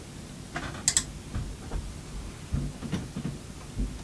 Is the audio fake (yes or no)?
no